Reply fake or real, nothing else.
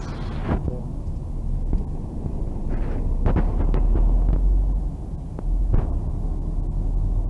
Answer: real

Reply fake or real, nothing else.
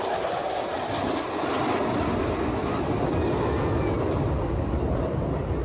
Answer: real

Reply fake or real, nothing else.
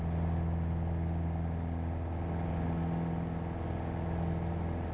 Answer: real